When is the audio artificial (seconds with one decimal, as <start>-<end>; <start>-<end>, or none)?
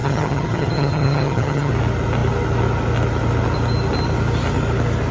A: 0.0-1.7